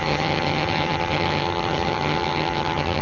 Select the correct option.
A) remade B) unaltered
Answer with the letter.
A